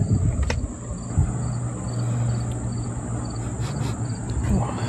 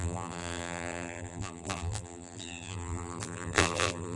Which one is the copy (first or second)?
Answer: second